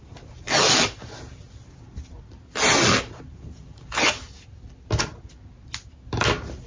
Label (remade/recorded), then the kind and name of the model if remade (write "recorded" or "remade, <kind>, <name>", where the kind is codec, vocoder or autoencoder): recorded